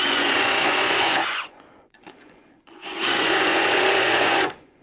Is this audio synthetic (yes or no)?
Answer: yes